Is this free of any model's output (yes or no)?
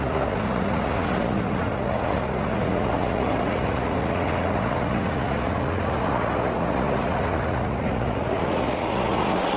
no